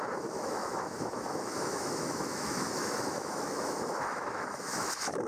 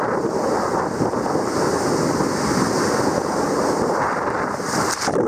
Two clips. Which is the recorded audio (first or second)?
second